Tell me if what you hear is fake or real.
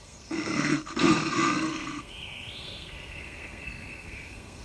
fake